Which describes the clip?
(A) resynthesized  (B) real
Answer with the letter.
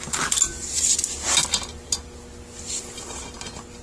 B